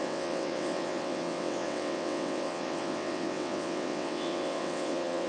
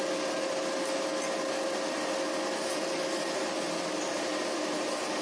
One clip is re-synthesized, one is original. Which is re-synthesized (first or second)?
first